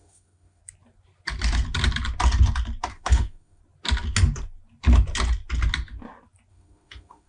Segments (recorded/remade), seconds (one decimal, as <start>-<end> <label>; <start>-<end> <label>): 0.0-0.6 remade; 0.6-2.9 recorded; 2.9-3.6 remade; 3.6-6.5 recorded; 6.5-7.3 remade